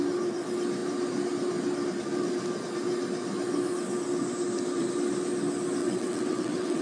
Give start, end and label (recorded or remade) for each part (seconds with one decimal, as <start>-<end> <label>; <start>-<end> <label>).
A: 0.0-5.8 recorded; 5.8-6.8 remade